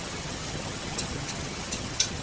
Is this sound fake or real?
fake